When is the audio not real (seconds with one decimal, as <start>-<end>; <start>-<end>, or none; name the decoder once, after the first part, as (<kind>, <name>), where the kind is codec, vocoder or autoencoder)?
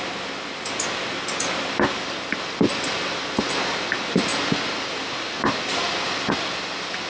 none